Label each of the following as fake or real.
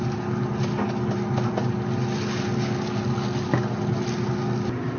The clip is real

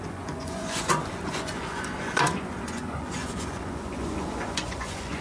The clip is fake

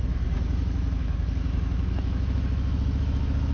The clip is fake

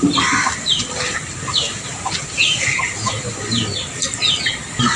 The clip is real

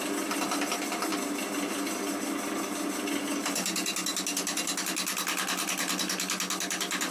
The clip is real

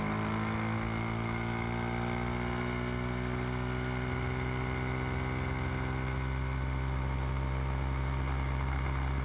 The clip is real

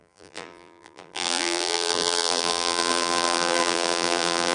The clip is fake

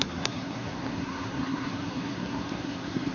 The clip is fake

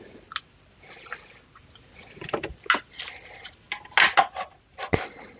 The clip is real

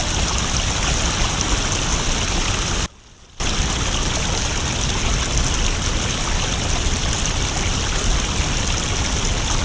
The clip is real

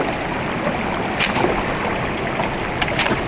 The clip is real